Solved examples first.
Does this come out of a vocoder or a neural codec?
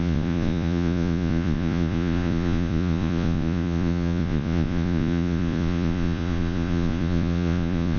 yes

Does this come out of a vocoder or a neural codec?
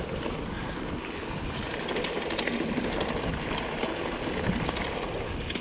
no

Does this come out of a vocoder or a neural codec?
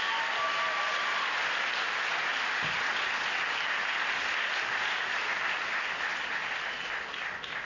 no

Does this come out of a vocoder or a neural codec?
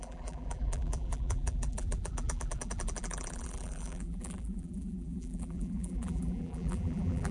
yes